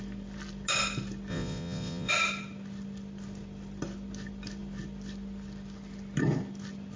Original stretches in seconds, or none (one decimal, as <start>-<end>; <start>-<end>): 0.0-1.3; 2.1-7.0